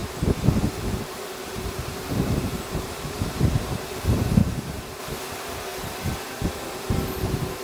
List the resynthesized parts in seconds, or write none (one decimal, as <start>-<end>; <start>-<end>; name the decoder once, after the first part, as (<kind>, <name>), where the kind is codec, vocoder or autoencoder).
0.0-3.8 (vocoder, BigVGAN v2); 4.4-5.0